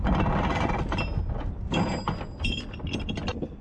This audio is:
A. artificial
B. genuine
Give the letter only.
B